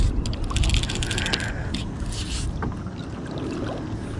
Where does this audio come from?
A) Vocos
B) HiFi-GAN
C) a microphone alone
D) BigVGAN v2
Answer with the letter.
C